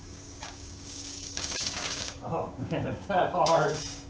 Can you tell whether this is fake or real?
fake